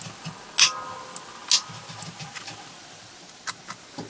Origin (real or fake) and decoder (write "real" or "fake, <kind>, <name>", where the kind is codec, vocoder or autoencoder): real